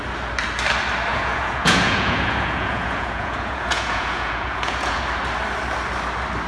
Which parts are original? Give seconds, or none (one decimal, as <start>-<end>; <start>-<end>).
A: 0.0-1.1; 5.0-6.5